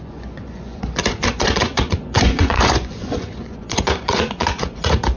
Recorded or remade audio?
remade